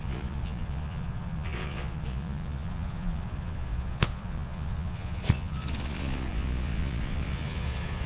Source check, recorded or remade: remade